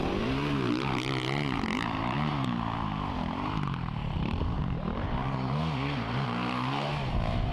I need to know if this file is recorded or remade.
remade